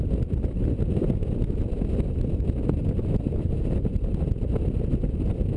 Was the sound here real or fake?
real